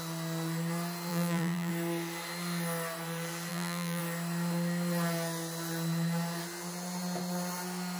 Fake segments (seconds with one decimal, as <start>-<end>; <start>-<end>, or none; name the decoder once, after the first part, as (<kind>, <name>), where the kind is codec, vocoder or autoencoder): 1.1-1.7 (vocoder, BigVGAN v2); 3.5-4.0